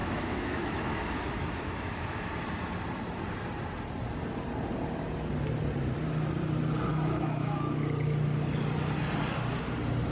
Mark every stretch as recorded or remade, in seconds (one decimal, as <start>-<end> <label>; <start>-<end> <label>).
0.0-2.3 remade; 2.3-6.9 recorded; 6.9-7.8 remade; 7.8-10.1 recorded

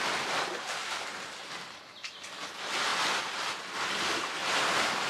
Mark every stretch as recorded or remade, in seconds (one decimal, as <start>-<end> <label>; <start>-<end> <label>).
0.0-0.8 recorded; 0.8-1.5 remade; 1.5-4.4 recorded; 4.4-5.1 remade

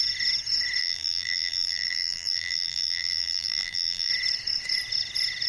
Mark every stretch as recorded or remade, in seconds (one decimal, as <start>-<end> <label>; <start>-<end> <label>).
0.0-0.8 recorded; 0.8-4.1 remade; 4.1-5.5 recorded

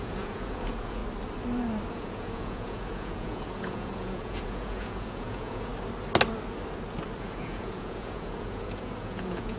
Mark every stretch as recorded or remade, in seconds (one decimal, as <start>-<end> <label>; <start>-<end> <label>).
0.0-1.0 remade; 1.0-1.9 recorded; 1.9-5.7 remade; 5.7-7.2 recorded; 7.2-9.6 remade

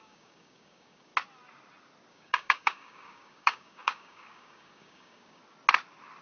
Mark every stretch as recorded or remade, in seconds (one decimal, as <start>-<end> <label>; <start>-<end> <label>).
0.0-1.1 remade; 1.1-2.1 recorded; 2.1-5.4 remade; 5.4-6.2 recorded